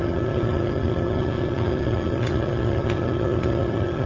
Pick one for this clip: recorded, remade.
remade